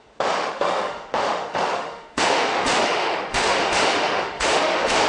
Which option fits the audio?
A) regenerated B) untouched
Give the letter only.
A